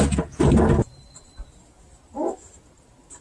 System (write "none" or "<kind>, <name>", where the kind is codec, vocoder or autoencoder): none